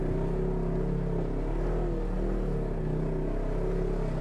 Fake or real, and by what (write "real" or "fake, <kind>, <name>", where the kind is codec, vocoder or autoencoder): real